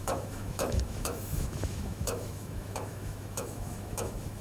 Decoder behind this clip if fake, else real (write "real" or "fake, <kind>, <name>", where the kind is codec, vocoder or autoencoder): fake, autoencoder, DAC-VAE